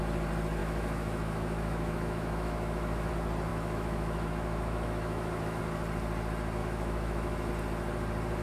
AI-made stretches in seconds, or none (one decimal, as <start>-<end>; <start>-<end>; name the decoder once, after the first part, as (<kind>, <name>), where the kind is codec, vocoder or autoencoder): 0.6-3.1 (autoencoder, DAC-VAE); 3.5-5.6; 6.6-7.5